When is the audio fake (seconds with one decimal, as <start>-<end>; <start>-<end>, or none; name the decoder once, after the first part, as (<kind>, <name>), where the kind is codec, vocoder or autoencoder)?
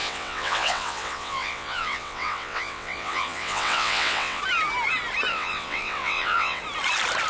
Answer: 0.0-4.4 (vocoder, WaveNeXt); 5.3-6.6